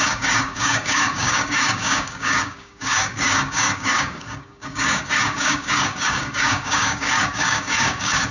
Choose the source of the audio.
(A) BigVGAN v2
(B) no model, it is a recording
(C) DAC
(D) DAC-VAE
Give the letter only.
C